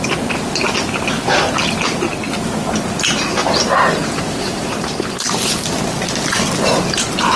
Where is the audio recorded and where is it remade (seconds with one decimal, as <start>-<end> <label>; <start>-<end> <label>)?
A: 0.0-3.4 recorded; 3.4-7.4 remade